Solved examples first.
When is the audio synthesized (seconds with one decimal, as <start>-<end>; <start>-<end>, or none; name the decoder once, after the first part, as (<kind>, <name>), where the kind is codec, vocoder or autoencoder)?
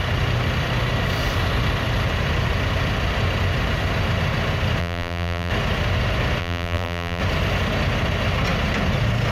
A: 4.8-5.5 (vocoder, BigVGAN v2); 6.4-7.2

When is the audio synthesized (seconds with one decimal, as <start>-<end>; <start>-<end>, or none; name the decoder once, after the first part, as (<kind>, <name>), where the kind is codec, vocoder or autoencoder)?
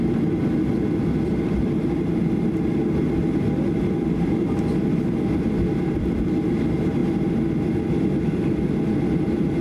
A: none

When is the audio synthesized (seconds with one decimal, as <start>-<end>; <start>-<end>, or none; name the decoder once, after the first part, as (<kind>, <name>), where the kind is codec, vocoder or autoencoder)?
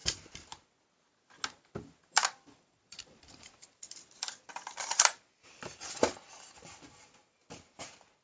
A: 1.6-7.4 (vocoder, BigVGAN v2)